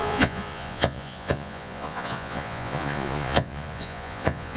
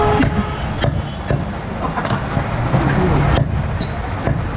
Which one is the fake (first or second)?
first